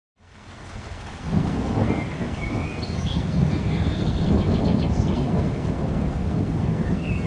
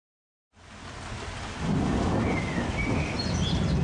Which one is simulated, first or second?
first